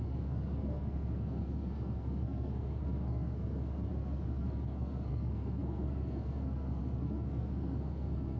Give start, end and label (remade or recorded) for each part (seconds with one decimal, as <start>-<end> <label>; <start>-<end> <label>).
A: 0.0-8.4 remade